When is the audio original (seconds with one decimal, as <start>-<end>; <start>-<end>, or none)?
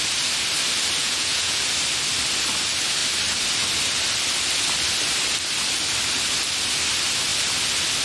0.0-1.0; 1.6-8.0